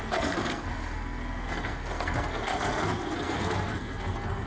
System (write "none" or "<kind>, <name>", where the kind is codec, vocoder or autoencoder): codec, SNAC